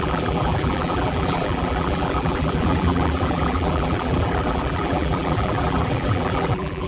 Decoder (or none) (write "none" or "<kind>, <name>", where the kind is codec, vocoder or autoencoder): vocoder, BigVGAN v2